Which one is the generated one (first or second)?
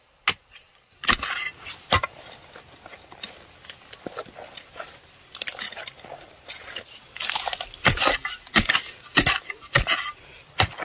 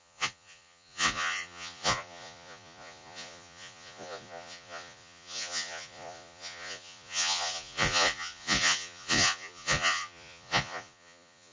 second